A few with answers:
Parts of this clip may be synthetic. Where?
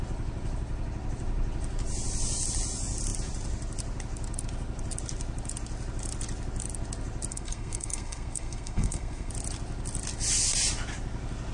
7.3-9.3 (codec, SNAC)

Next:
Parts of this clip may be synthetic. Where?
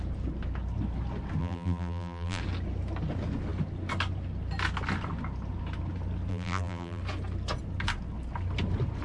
1.4-2.4 (vocoder, BigVGAN v2); 6.3-7.0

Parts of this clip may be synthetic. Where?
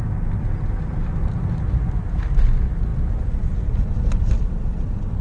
none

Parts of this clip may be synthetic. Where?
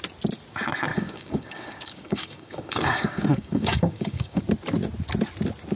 0.9-4.4 (codec, DAC)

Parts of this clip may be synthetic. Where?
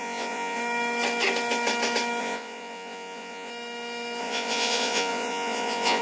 0.0-0.6 (vocoder, Vocos); 2.2-3.5; 4.2-6.0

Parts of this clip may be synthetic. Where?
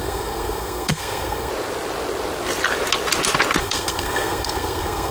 0.0-1.5 (codec, SNAC); 3.6-5.1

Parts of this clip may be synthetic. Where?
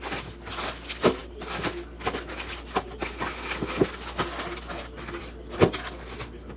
none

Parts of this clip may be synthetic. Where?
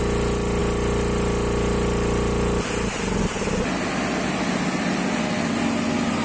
none